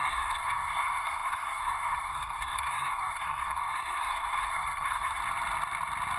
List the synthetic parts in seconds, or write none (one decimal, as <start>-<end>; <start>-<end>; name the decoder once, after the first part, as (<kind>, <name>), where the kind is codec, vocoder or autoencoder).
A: 0.0-5.2 (codec, SNAC)